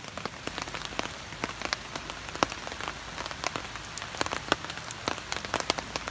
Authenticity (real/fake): real